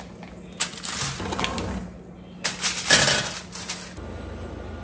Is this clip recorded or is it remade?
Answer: recorded